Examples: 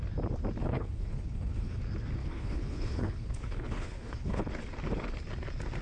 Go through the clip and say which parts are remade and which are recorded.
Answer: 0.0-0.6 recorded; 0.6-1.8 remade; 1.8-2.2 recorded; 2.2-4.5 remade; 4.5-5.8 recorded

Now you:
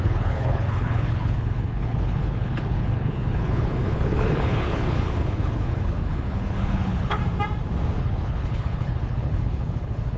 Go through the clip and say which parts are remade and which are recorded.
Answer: 0.0-7.2 remade; 7.2-8.0 recorded; 8.0-10.2 remade

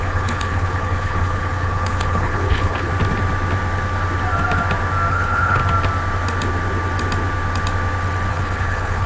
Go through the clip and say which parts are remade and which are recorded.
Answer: 0.0-2.9 remade; 2.9-5.1 recorded; 5.1-5.6 remade; 5.6-8.3 recorded; 8.3-9.1 remade

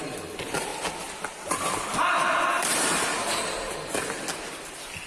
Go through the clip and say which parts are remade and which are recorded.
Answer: 0.0-5.1 recorded